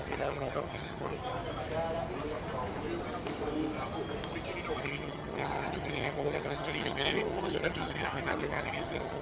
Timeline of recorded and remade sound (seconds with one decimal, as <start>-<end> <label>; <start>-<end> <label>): 0.0-1.2 remade; 1.2-4.8 recorded; 4.8-9.2 remade